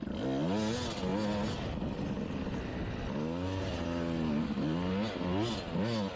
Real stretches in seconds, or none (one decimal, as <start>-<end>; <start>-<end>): 0.0-6.2